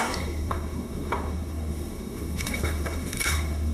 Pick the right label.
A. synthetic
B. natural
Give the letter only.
A